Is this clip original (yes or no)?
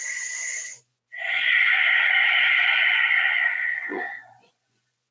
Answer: no